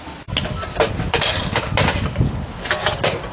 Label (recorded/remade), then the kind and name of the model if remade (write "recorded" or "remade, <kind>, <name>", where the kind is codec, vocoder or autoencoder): recorded